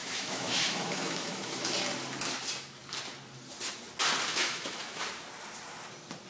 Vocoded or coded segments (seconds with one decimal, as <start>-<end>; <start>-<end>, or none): 0.0-1.6; 4.3-5.0